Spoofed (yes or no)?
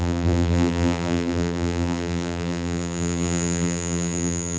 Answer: yes